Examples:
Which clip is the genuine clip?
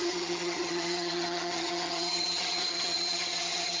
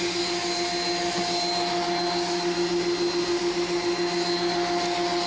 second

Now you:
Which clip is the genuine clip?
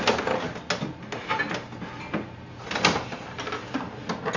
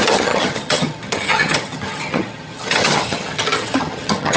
first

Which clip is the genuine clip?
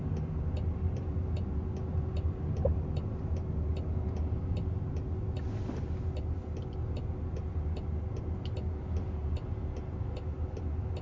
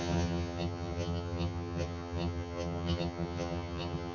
first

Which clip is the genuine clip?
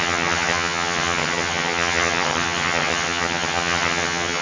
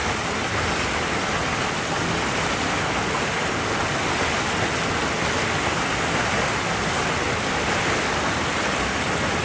second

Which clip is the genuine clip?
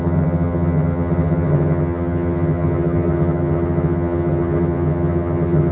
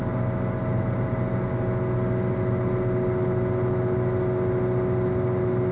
second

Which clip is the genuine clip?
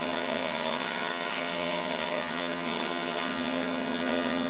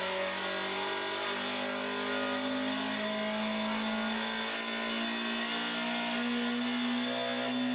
second